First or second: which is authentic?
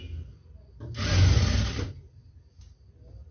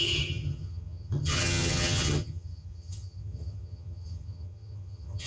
first